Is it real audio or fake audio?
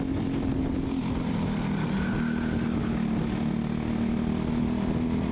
real